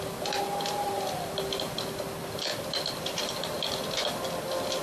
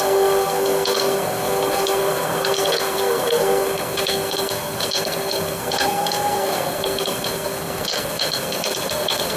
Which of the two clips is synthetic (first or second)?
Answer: second